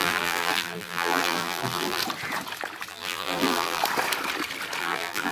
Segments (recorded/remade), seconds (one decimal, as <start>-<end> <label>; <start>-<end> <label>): 0.0-2.0 remade; 2.0-2.9 recorded; 2.9-3.8 remade; 3.8-4.8 recorded; 4.8-5.3 remade